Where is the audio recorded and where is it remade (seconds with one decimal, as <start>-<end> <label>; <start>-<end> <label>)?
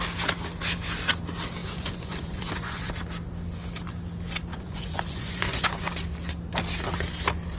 0.0-1.6 recorded; 1.6-2.9 remade; 2.9-4.5 recorded; 4.5-5.9 remade; 5.9-7.6 recorded